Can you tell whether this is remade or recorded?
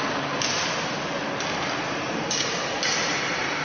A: recorded